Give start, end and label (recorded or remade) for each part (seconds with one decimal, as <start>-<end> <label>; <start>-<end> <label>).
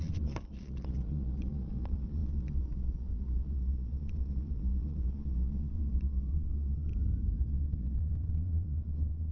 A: 0.0-6.9 remade; 6.9-7.5 recorded; 7.5-9.3 remade